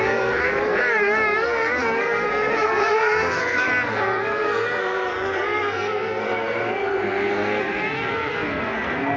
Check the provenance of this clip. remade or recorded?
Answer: remade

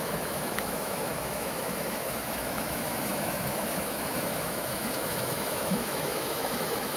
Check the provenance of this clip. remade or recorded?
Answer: remade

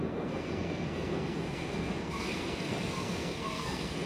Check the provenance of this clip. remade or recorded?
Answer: remade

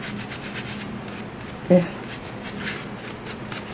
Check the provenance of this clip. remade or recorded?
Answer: recorded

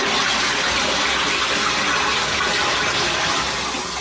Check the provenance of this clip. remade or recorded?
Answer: recorded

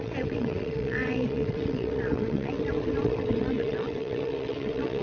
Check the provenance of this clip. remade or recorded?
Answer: remade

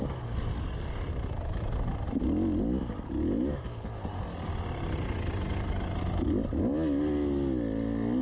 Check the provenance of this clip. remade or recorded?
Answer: recorded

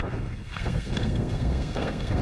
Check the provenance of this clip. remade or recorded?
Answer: remade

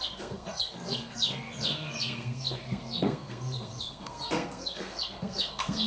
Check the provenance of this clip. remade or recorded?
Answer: remade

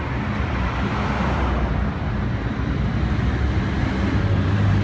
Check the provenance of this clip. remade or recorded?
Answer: recorded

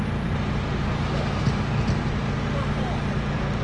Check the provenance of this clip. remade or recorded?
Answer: recorded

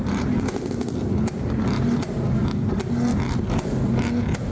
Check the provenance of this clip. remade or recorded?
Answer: recorded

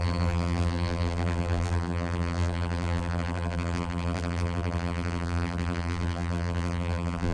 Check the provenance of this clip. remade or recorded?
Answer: remade